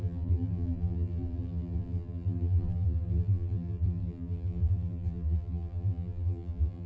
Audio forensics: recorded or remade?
remade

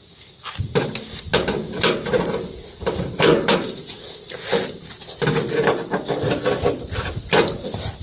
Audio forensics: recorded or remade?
recorded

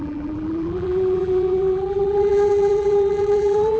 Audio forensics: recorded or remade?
remade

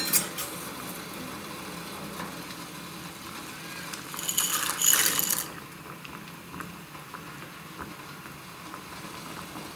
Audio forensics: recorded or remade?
recorded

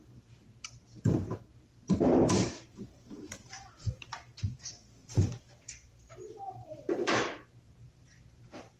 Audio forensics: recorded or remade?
remade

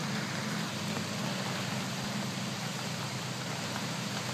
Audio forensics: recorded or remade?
recorded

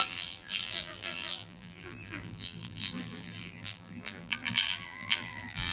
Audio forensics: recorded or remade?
remade